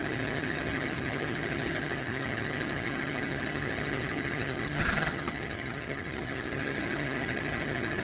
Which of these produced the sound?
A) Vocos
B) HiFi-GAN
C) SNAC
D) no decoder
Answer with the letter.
B